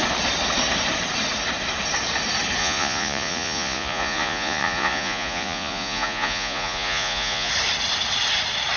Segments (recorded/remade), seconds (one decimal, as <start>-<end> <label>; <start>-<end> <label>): 0.0-2.6 recorded; 2.6-7.5 remade; 7.5-8.8 recorded